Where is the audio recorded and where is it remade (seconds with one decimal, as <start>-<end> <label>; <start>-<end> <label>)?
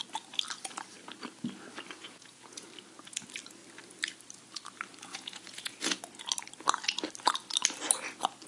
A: 0.0-2.0 recorded; 2.0-2.7 remade; 2.7-5.1 recorded; 5.1-6.0 remade; 6.0-8.5 recorded